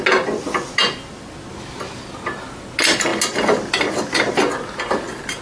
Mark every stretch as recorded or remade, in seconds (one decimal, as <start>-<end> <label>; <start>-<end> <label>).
0.0-5.4 recorded